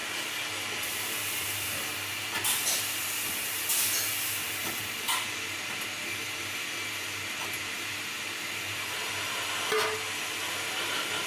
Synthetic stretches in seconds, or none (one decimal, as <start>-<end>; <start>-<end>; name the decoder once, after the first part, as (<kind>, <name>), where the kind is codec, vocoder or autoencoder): 0.0-0.5 (codec, DAC)